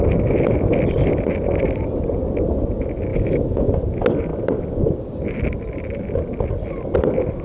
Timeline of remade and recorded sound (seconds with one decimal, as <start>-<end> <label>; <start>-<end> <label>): 0.0-3.1 recorded; 3.1-3.7 remade; 3.7-7.4 recorded